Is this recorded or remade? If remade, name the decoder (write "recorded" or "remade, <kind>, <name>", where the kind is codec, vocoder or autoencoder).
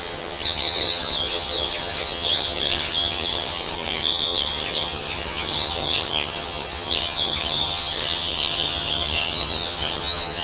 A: remade, vocoder, HiFi-GAN